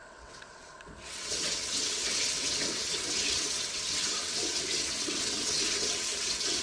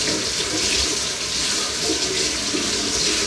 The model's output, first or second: first